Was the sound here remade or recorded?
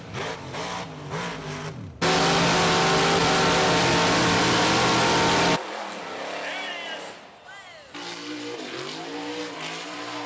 recorded